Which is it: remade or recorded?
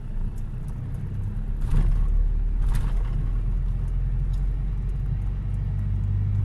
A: recorded